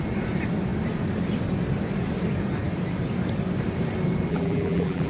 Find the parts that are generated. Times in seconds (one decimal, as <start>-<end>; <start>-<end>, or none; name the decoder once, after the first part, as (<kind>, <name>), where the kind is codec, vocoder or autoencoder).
4.3-5.1 (vocoder, BigVGAN v2)